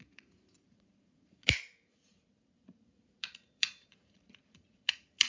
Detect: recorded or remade remade